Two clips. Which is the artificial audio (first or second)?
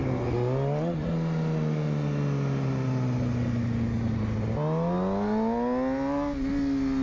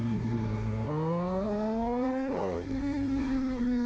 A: second